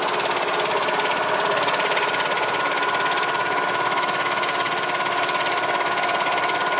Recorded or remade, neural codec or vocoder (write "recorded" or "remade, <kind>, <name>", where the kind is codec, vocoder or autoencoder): recorded